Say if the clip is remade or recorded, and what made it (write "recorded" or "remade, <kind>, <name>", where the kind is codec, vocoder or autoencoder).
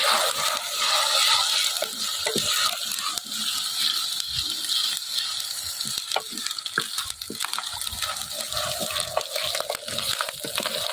recorded